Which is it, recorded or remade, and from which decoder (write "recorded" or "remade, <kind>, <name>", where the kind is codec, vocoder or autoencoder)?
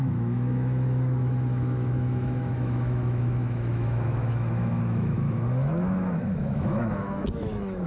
remade, autoencoder, DAC-VAE